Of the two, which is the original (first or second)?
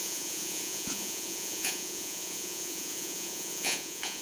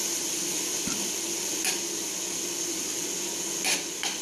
second